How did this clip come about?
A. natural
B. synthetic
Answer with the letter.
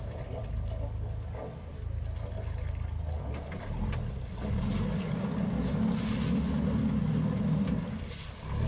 A